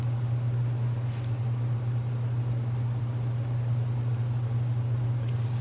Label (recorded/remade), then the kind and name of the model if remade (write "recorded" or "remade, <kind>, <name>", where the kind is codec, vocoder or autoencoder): recorded